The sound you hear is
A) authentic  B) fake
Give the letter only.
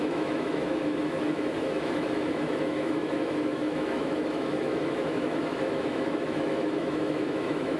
B